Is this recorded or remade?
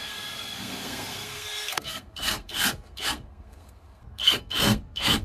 remade